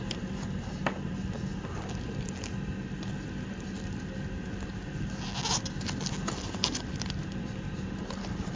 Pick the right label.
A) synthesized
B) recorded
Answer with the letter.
B